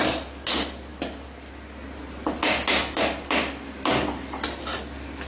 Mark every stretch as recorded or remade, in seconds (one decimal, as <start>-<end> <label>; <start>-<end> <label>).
0.0-5.3 recorded